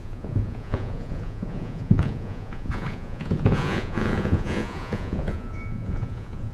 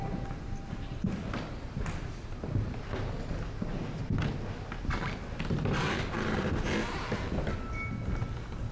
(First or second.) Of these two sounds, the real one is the second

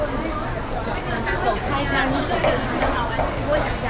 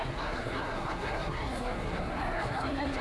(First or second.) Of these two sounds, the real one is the first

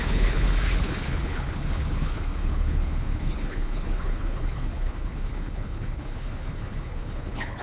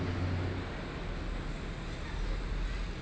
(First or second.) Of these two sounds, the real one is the second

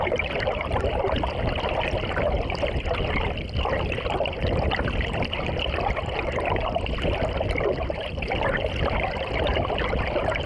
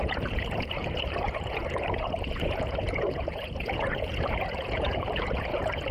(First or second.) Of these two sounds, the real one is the first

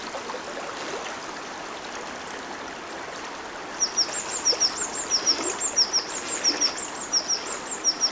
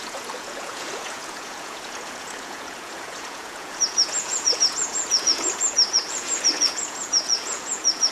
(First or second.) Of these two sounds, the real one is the first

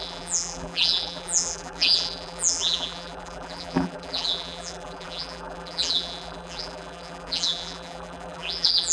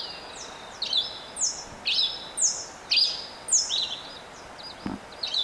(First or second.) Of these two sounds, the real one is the second